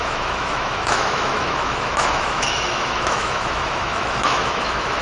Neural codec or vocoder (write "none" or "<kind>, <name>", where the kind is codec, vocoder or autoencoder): autoencoder, DAC-VAE